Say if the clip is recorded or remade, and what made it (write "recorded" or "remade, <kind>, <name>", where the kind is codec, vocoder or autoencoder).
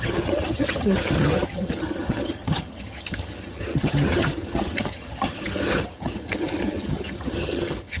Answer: remade, vocoder, HiFi-GAN